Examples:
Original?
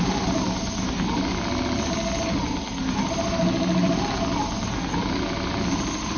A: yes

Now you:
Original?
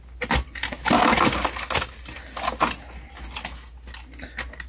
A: yes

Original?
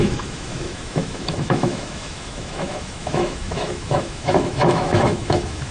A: no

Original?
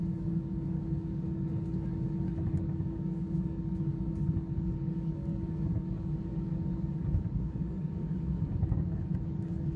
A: no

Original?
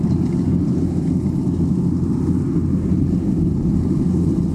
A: yes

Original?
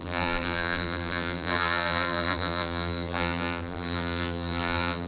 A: no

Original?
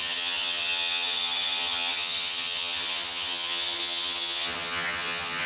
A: no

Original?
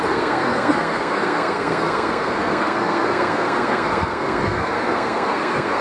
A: no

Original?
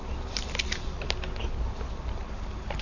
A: yes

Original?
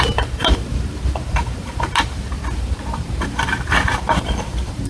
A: no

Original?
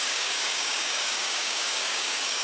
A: no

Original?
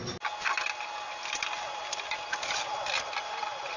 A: yes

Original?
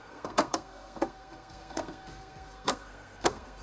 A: no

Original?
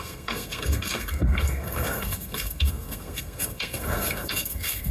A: no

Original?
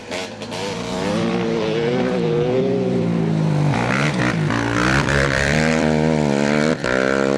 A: no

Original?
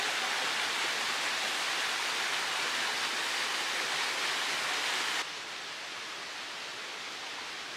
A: yes